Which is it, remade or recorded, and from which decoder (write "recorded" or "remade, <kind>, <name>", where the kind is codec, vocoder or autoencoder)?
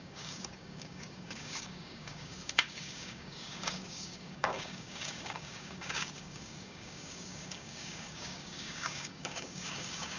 remade, codec, DAC